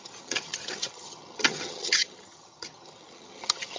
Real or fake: fake